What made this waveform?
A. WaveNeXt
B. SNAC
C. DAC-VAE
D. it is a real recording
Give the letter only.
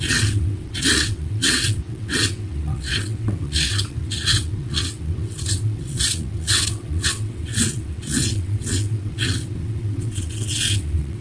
A